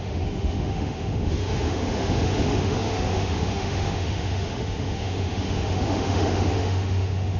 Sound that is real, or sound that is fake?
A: fake